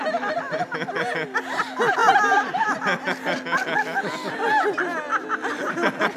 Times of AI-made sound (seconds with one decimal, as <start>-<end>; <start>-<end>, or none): none